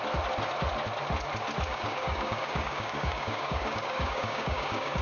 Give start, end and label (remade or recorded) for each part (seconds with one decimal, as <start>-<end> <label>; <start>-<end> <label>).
0.0-1.7 recorded; 1.7-5.0 remade